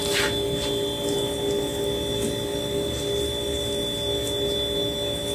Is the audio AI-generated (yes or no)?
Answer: no